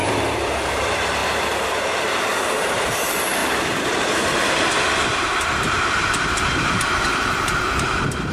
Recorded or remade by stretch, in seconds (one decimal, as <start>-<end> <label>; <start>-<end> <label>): 0.0-8.3 remade